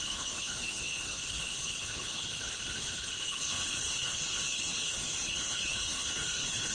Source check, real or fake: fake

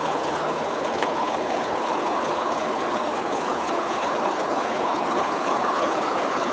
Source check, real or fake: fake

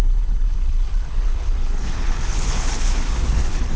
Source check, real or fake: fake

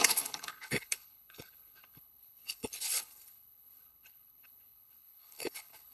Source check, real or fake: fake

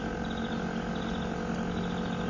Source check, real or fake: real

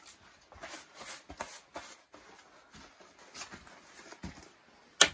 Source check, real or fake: real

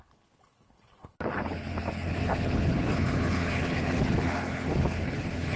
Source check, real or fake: fake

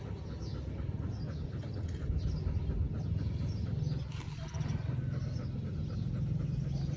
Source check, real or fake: real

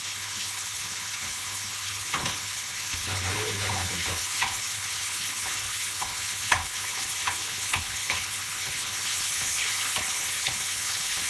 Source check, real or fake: fake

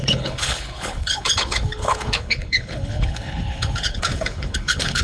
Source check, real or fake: fake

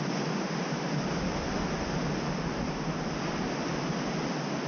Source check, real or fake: real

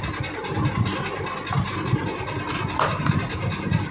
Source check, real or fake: real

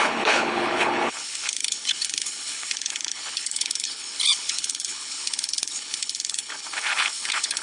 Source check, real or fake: fake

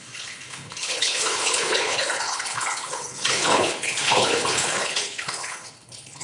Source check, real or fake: fake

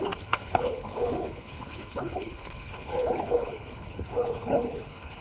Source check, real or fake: fake